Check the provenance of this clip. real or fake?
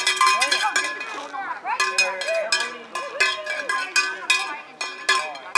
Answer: real